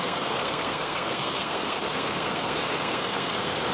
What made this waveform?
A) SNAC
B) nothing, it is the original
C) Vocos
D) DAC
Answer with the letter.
A